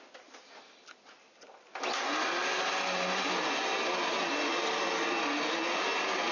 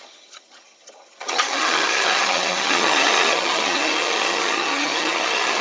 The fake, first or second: second